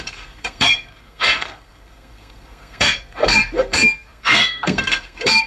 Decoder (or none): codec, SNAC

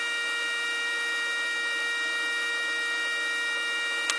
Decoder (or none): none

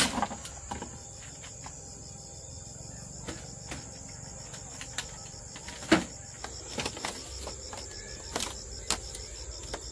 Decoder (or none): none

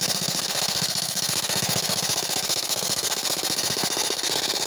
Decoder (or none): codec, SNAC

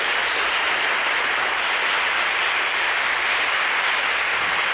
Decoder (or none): none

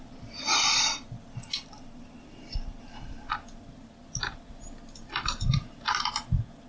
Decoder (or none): none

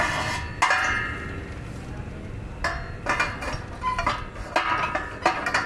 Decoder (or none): none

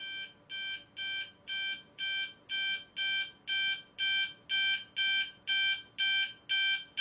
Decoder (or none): none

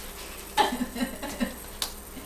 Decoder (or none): none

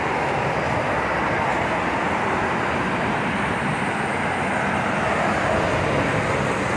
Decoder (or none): none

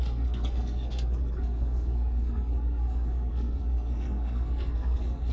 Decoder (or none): codec, SNAC